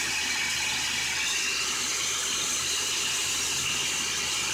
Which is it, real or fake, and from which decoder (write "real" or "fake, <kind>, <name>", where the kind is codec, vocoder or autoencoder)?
real